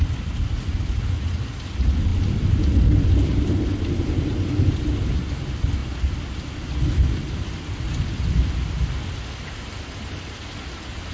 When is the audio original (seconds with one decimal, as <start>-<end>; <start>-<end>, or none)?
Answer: 0.0-11.1